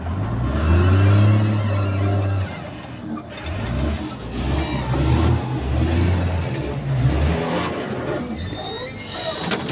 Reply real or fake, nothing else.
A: real